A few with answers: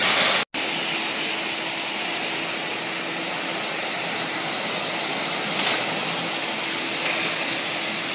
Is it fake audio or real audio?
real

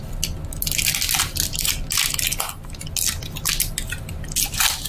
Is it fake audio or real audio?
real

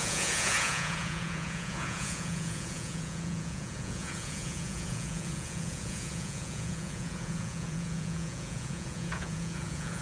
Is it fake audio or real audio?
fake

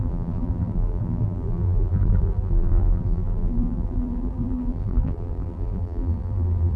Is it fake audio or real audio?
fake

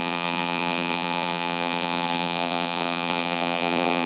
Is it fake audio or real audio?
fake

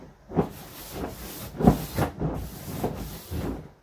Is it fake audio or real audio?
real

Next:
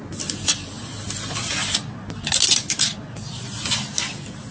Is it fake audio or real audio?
real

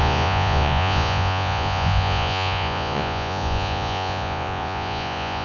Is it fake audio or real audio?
fake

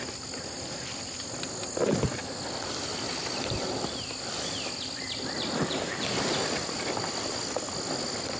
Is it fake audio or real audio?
real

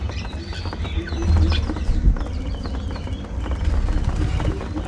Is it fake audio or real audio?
real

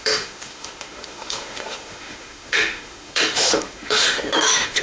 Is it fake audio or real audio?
fake